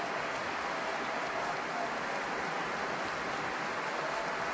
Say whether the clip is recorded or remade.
recorded